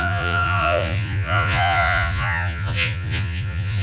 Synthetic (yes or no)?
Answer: yes